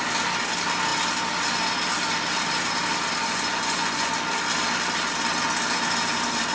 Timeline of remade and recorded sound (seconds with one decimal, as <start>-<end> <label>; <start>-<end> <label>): 0.0-3.2 recorded; 3.2-4.1 remade; 4.1-6.5 recorded

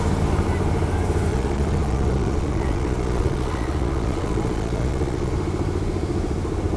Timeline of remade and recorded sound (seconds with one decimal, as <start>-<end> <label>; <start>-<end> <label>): 0.0-1.3 recorded; 1.3-5.3 remade; 5.3-6.8 recorded

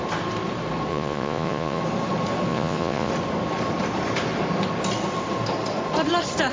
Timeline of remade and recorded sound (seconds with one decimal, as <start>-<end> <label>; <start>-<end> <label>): 0.0-0.9 recorded; 0.9-1.8 remade; 1.8-2.5 recorded; 2.5-3.1 remade; 3.1-6.5 recorded